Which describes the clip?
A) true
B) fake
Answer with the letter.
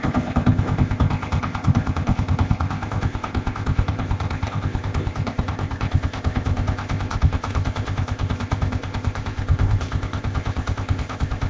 B